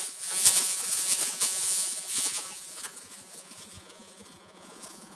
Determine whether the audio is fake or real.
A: fake